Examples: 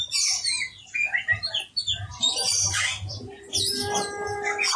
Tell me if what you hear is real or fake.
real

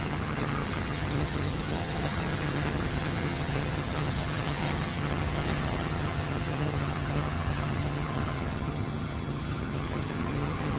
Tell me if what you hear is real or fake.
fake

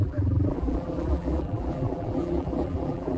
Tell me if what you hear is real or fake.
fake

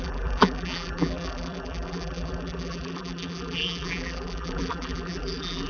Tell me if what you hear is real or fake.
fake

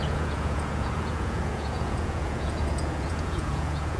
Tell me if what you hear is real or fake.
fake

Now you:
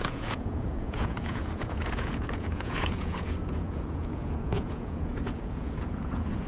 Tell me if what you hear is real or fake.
fake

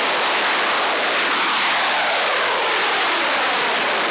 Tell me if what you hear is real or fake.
real